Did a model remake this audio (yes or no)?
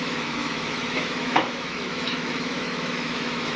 yes